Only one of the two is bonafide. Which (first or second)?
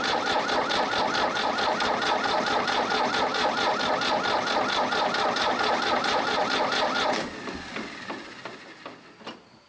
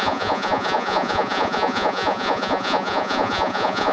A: first